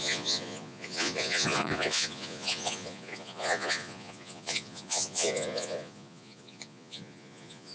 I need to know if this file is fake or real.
fake